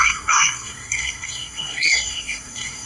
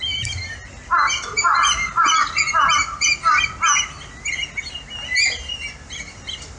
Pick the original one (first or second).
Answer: second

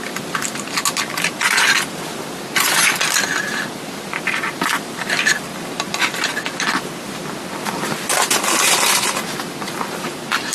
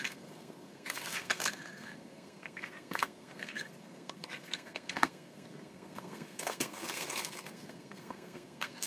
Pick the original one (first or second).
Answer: first